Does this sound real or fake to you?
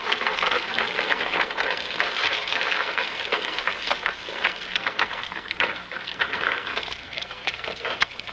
fake